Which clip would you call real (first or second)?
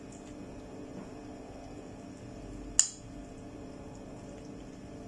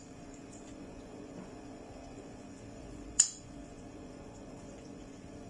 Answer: first